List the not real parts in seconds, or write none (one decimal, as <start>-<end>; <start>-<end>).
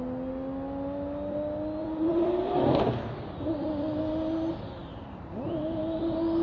1.8-4.0; 4.8-5.5